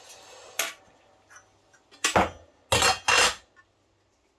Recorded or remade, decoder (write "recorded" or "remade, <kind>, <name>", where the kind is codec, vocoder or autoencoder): recorded